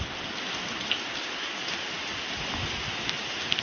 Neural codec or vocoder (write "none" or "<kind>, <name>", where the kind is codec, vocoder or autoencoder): none